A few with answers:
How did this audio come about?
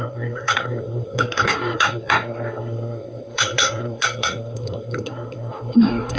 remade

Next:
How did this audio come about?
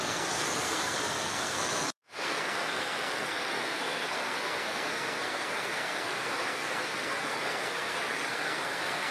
remade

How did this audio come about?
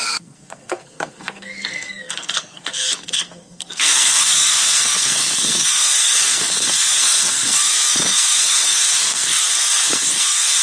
remade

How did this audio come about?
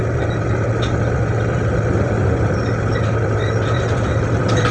recorded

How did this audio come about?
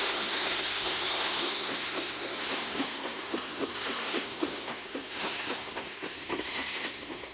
remade